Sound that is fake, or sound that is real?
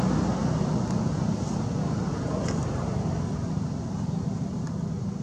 real